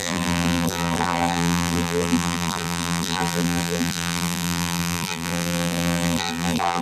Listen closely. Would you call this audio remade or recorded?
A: remade